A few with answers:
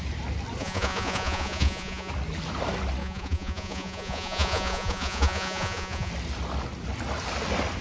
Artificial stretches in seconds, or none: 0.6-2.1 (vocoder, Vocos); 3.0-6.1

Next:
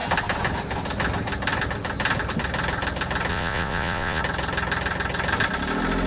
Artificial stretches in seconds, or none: 3.3-4.2 (vocoder, Vocos)

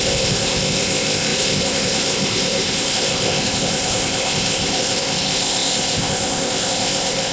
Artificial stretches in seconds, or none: 0.0-7.3 (codec, ZipCodec)

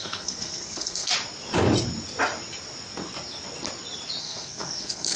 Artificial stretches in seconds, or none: 0.0-1.1 (codec, SNAC); 4.2-5.2

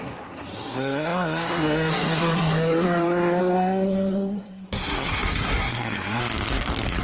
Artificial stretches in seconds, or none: 0.0-6.2 (codec, SNAC)

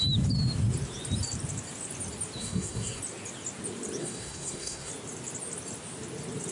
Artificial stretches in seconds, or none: 2.4-3.0 (codec, SNAC); 4.0-4.9

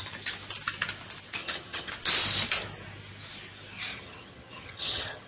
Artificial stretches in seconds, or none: 1.4-1.9 (vocoder, HiFi-GAN); 3.9-5.3

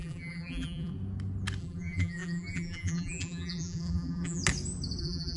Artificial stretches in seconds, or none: 0.0-0.9 (vocoder, BigVGAN v2); 1.6-4.4; 5.0-5.4